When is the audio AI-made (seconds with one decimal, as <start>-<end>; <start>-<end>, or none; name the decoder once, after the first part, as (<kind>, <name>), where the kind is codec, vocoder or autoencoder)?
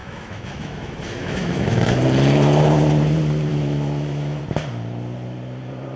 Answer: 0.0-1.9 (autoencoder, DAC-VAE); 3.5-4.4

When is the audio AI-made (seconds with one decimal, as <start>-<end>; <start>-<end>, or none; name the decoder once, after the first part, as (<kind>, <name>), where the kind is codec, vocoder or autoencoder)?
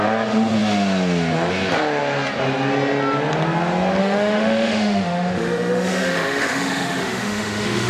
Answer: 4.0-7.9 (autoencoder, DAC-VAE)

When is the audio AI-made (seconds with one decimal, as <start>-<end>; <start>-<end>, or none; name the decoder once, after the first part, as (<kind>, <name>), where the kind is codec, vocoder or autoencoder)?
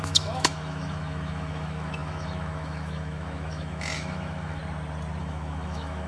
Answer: 0.0-4.6 (autoencoder, DAC-VAE); 5.2-6.1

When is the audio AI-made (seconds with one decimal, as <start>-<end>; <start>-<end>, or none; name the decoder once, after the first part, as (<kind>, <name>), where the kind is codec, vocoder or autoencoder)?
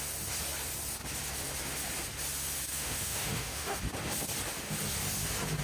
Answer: 2.7-3.8 (autoencoder, DAC-VAE)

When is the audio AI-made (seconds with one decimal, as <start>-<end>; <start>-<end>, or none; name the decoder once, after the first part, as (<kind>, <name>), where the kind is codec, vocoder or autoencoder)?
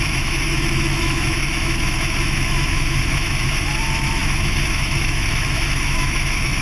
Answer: 0.0-6.6 (autoencoder, DAC-VAE)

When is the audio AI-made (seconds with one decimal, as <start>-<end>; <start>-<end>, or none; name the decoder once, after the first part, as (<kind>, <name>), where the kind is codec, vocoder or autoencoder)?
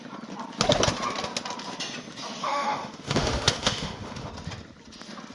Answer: 2.4-4.3 (autoencoder, DAC-VAE)